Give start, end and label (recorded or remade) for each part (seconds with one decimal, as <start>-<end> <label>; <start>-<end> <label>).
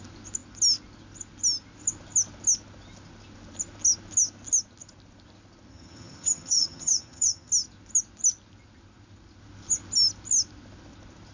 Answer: 0.0-5.7 recorded; 5.7-7.5 remade; 7.5-11.3 recorded